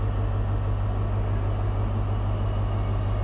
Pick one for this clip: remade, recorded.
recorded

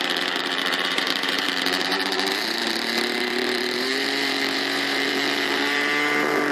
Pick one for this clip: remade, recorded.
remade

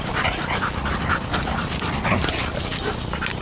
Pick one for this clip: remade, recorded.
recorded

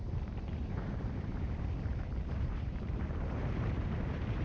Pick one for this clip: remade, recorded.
remade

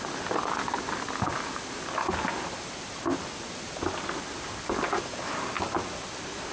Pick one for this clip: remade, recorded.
recorded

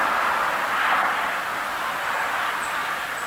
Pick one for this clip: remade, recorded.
recorded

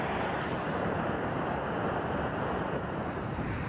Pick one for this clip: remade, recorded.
remade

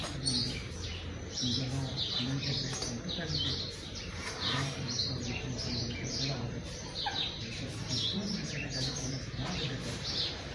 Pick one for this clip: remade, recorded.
remade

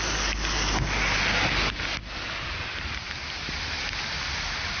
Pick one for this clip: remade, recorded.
recorded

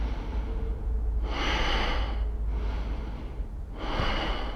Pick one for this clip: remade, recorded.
recorded